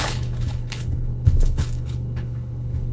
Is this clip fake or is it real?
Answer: fake